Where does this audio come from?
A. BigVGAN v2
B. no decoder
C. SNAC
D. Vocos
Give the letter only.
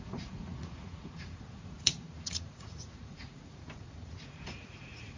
D